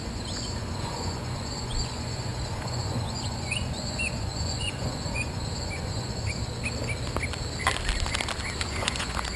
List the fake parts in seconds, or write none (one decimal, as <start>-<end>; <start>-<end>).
0.0-6.4; 8.5-9.4